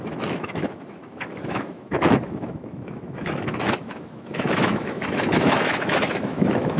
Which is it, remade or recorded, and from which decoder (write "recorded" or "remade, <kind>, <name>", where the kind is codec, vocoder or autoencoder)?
remade, autoencoder, DAC-VAE